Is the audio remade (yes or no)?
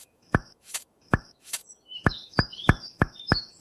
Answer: yes